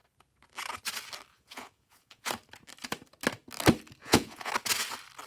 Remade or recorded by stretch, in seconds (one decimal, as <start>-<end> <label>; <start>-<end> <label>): 0.0-1.3 recorded; 1.3-2.3 remade; 2.3-4.0 recorded; 4.0-4.5 remade; 4.5-5.3 recorded